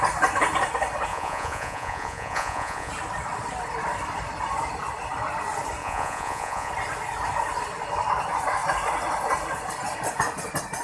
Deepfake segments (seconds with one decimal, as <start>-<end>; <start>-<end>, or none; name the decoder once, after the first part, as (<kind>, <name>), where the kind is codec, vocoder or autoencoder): 1.1-2.9 (vocoder, Vocos); 5.8-6.7